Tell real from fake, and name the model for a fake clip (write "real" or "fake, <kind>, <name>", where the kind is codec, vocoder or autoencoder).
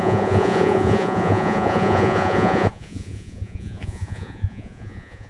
fake, vocoder, Vocos